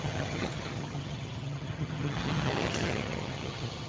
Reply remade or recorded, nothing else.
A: remade